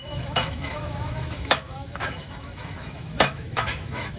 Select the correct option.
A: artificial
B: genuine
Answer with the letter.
A